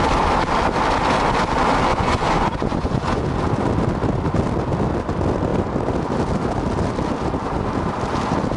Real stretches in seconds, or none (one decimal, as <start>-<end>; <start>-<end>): 0.0-1.9; 3.2-8.6